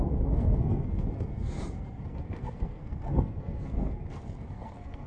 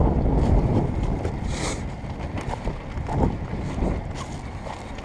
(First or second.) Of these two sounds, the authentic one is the second